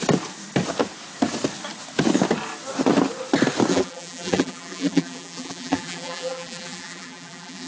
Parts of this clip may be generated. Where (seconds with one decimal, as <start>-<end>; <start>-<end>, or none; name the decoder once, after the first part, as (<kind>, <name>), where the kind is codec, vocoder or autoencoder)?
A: 3.7-7.7 (vocoder, BigVGAN v2)